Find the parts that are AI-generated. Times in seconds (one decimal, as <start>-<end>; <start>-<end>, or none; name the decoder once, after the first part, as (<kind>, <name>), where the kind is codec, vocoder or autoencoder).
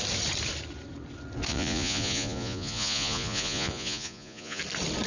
1.5-4.6 (vocoder, Vocos)